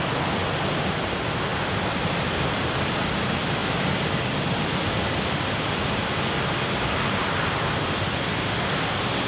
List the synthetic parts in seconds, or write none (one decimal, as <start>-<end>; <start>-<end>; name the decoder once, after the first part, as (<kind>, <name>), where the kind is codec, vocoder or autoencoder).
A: 1.5-3.0 (vocoder, BigVGAN v2); 3.6-6.0